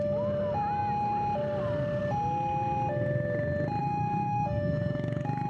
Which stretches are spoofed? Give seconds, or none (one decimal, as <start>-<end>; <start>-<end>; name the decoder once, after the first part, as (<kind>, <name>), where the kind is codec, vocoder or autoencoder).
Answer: 3.8-5.5 (codec, DAC)